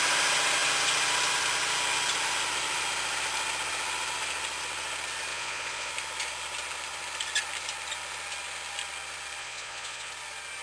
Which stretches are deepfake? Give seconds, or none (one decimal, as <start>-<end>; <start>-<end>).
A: 5.3-5.9; 9.4-10.1